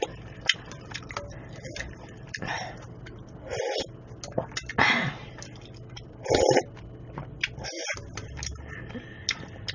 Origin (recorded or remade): recorded